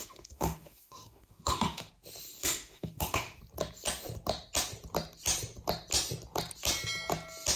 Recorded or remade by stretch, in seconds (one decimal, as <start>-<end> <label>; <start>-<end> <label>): 0.0-1.9 remade; 1.9-2.4 recorded; 2.4-3.4 remade; 3.4-7.6 recorded